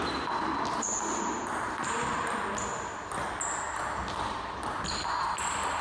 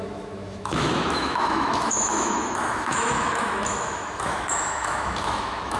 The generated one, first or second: second